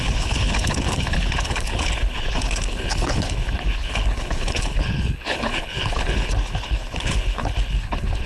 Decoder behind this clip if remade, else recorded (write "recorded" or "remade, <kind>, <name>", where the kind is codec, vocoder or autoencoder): remade, codec, HILCodec